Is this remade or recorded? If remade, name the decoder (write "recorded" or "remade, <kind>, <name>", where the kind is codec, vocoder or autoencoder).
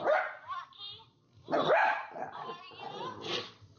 recorded